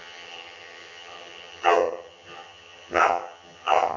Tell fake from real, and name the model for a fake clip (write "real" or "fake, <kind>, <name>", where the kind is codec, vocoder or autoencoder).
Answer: fake, vocoder, HiFi-GAN